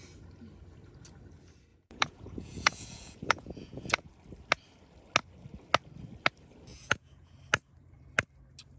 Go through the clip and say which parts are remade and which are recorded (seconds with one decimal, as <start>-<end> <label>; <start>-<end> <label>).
0.0-1.7 recorded; 1.7-4.1 remade; 4.1-6.7 recorded; 6.7-7.3 remade; 7.3-8.8 recorded